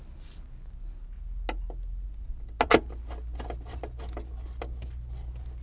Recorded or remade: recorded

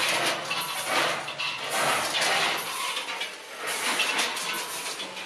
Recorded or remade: recorded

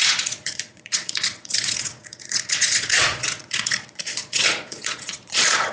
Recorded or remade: remade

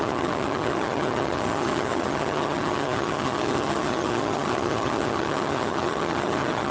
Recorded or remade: remade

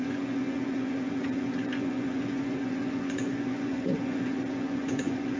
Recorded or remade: remade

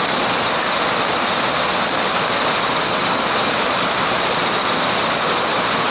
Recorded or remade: recorded